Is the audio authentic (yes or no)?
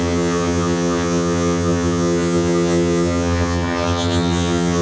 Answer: no